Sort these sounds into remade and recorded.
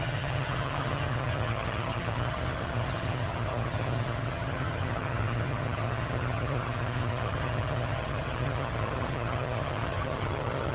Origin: remade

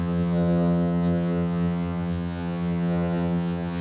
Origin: remade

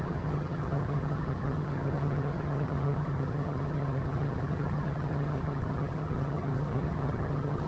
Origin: remade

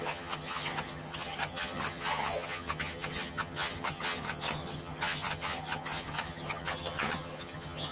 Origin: remade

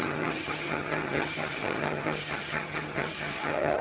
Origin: remade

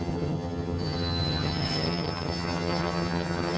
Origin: remade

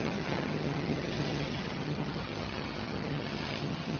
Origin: remade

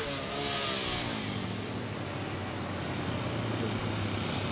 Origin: recorded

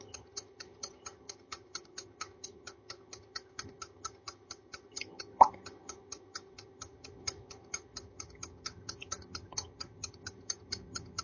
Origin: remade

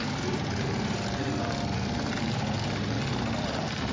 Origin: recorded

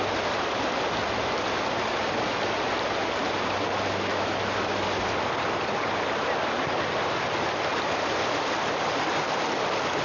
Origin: recorded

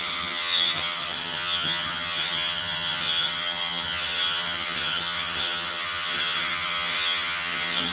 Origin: remade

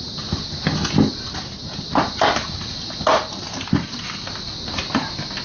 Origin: recorded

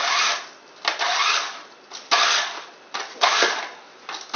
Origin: recorded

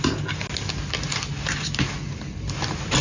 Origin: recorded